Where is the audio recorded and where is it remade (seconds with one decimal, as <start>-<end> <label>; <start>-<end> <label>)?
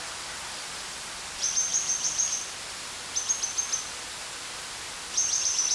0.0-5.7 recorded